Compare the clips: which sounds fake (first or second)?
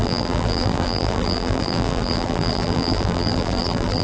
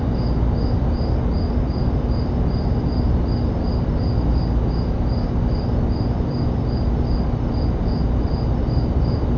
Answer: first